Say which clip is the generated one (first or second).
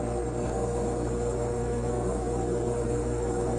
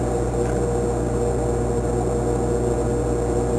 first